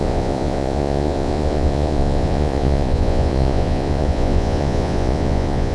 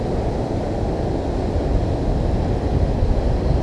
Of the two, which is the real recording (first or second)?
second